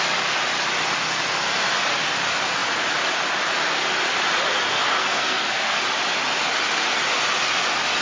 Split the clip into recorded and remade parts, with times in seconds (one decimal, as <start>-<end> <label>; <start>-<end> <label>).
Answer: 0.0-5.0 recorded; 5.0-5.8 remade; 5.8-8.0 recorded

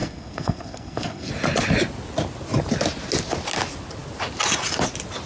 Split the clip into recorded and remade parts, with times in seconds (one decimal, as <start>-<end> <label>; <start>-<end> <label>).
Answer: 0.0-1.3 remade; 1.3-5.3 recorded